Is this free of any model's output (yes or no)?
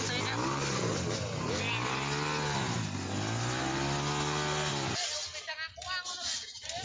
yes